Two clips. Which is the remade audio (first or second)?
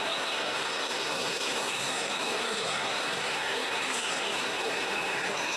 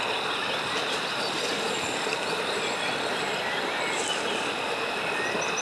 first